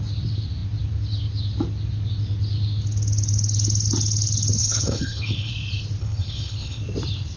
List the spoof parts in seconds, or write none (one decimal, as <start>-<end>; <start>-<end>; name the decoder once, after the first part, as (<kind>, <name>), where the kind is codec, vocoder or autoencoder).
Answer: 4.6-5.5 (codec, HILCodec); 6.0-6.8